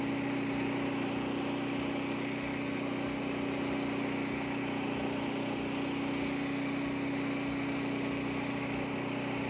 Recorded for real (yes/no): yes